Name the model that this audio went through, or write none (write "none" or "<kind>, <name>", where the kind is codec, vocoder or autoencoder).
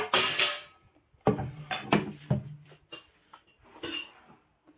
none